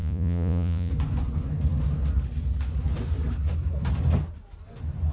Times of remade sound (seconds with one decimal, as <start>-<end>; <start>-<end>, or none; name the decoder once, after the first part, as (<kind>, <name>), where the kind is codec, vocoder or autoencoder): 0.0-0.9 (vocoder, Vocos)